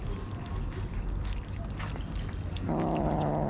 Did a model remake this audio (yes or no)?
no